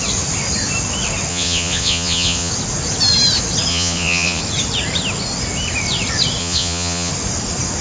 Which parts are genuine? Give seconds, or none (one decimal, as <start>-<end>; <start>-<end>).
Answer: 0.0-1.3; 2.5-3.7; 4.4-6.4; 7.1-7.8